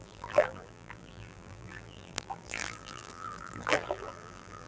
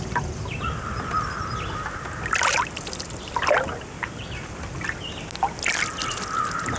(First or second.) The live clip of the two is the second